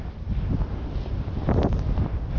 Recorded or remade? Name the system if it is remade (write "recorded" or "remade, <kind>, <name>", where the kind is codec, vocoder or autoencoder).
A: recorded